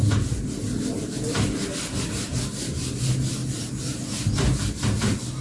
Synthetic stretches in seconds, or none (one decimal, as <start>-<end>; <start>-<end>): none